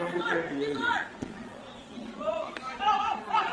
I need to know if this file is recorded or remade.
remade